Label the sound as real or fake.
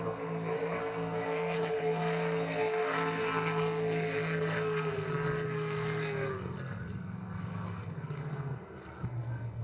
fake